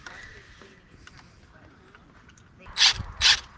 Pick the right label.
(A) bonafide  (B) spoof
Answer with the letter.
A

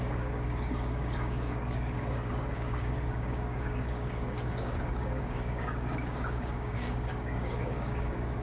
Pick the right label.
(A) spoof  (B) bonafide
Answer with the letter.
A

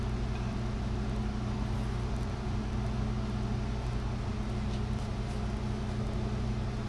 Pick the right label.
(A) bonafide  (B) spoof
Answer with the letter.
A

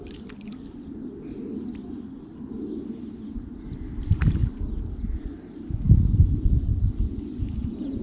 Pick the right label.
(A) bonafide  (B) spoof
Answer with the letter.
A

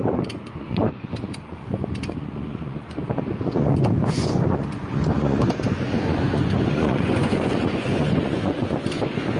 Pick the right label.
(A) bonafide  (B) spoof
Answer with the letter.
B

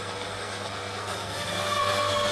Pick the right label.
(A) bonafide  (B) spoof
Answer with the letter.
B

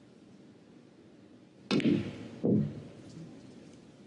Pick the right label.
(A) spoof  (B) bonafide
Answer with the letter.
B